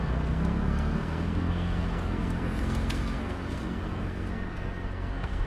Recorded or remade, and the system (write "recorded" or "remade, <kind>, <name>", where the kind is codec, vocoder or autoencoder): remade, codec, SNAC